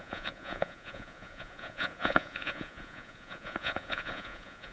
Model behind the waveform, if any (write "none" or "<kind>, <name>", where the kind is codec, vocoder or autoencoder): vocoder, Vocos